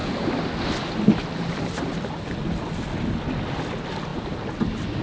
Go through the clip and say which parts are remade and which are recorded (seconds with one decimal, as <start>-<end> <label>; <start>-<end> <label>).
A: 0.0-5.0 recorded